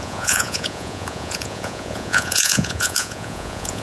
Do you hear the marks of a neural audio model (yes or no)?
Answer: yes